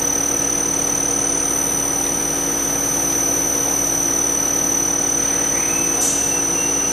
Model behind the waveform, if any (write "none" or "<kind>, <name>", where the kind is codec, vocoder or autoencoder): none